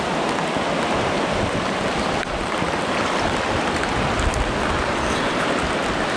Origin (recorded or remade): recorded